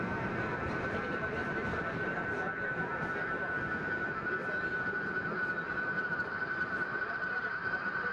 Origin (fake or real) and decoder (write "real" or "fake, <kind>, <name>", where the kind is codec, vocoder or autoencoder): fake, vocoder, BigVGAN v2